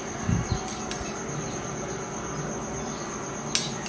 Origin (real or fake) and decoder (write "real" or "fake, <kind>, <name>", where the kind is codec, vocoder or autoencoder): real